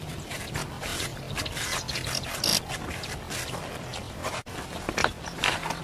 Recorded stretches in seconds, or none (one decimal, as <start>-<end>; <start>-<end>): 0.0-0.9; 1.4-3.9